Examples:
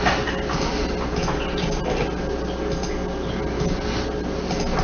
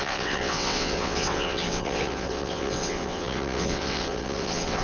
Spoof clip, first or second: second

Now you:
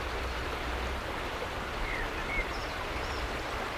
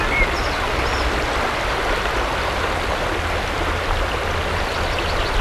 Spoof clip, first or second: first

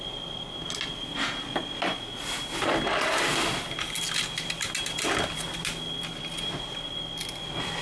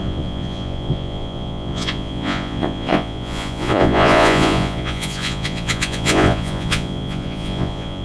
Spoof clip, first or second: second